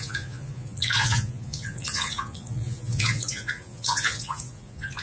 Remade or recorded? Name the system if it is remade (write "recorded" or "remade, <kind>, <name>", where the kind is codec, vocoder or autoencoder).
remade, vocoder, Vocos